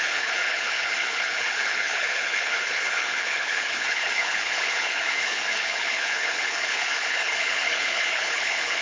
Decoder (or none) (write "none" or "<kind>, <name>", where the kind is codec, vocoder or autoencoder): codec, HILCodec